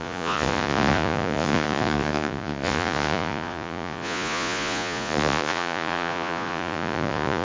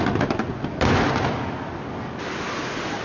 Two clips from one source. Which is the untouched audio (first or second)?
second